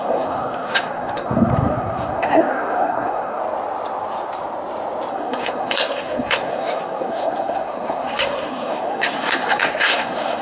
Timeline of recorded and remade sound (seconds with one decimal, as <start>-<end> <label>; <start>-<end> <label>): 0.0-3.4 remade; 3.4-5.1 recorded; 5.1-10.4 remade

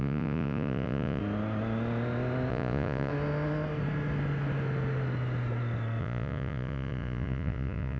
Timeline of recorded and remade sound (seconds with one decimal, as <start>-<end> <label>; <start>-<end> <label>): 0.0-1.2 remade; 1.2-2.5 recorded; 2.5-3.1 remade; 3.1-6.0 recorded; 6.0-8.0 remade

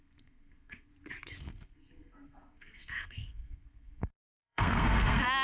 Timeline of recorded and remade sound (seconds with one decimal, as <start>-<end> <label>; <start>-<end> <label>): 0.0-0.9 remade; 0.9-1.4 recorded; 1.4-5.4 remade

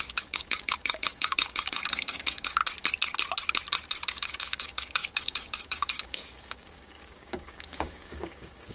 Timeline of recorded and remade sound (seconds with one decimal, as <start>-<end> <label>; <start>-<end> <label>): 0.0-2.6 remade; 2.6-4.1 recorded; 4.1-8.7 remade

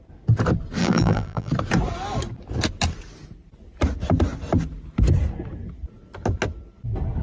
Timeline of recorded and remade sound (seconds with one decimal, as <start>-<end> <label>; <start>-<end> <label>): 0.0-0.8 recorded; 0.8-1.5 remade; 1.5-7.2 recorded

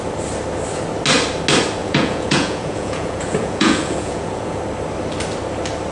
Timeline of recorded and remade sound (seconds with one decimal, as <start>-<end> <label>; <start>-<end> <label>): 0.0-1.8 recorded; 1.8-4.6 remade; 4.6-5.9 recorded